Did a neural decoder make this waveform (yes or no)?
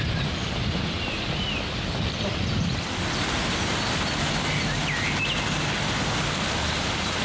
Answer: no